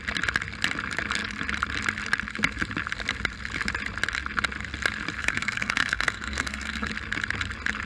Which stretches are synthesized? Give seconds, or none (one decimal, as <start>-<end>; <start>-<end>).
5.2-6.9